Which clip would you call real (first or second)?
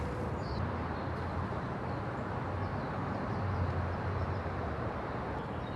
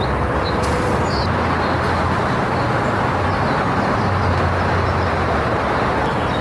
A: second